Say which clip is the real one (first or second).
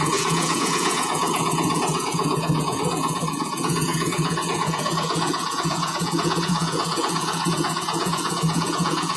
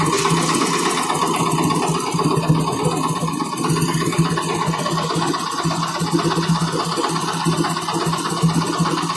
second